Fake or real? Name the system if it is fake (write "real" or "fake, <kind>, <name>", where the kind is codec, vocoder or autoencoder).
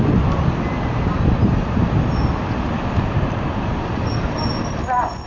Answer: real